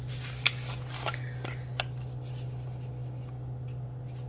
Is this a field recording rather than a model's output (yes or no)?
yes